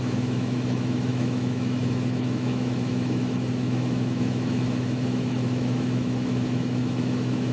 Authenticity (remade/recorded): remade